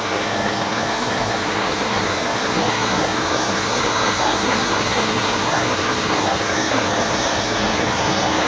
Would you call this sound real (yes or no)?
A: no